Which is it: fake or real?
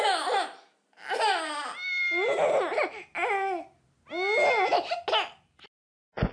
real